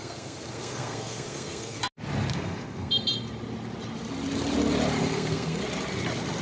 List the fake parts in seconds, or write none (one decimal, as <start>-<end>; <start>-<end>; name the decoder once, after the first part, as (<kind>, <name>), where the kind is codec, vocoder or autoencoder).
0.0-1.8 (codec, SNAC); 2.3-2.9; 5.0-5.6